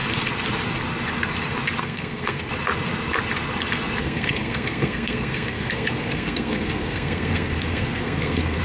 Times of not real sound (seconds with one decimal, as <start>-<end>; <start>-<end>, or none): 1.8-2.5; 4.0-8.6